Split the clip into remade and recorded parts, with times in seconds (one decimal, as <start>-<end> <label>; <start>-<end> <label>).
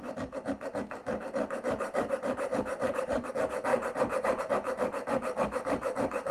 0.0-1.0 recorded; 1.0-3.3 remade; 3.3-3.7 recorded; 3.7-4.4 remade; 4.4-6.3 recorded